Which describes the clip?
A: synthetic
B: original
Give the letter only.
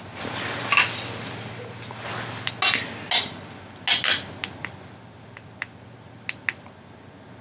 B